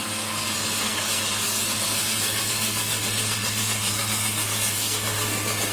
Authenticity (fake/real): fake